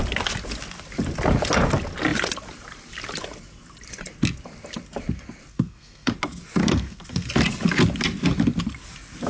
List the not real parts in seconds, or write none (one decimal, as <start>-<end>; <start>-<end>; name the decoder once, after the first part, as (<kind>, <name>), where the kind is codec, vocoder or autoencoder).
5.5-6.1 (codec, SNAC); 6.6-7.3